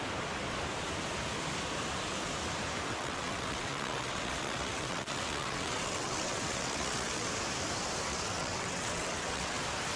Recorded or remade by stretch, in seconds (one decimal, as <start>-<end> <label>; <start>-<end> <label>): 0.0-2.9 recorded; 2.9-7.3 remade; 7.3-8.1 recorded; 8.1-9.6 remade; 9.6-10.0 recorded